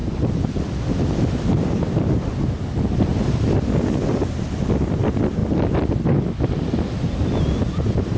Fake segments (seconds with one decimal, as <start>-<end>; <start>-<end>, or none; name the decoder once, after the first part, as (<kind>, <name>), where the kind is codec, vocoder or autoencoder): none